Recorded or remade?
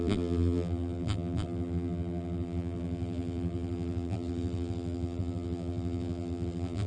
remade